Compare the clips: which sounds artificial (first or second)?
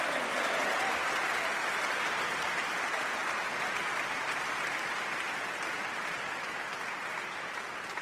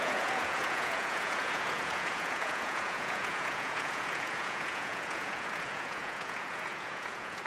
second